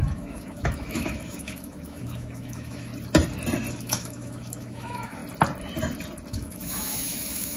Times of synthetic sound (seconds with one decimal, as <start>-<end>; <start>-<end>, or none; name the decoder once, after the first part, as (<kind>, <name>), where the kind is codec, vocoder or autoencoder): 0.0-2.9 (autoencoder, DAC-VAE); 3.7-5.2; 6.3-7.6